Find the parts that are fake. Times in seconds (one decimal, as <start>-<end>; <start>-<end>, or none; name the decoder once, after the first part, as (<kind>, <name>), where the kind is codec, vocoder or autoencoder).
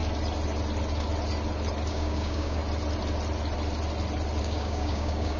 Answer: 1.9-2.6 (codec, DAC); 4.4-5.4